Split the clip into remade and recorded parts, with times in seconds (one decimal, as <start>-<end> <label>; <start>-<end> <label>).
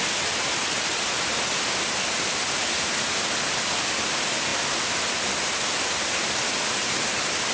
0.0-7.5 recorded